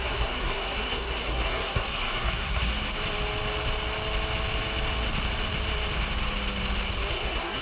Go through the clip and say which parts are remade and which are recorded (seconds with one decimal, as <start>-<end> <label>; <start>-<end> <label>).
0.0-2.7 remade; 2.7-7.1 recorded; 7.1-7.6 remade